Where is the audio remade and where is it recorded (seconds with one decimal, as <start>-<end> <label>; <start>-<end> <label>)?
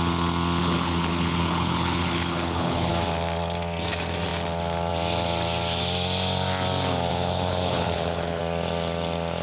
0.0-0.6 recorded; 0.6-2.9 remade; 2.9-7.1 recorded; 7.1-8.4 remade; 8.4-9.4 recorded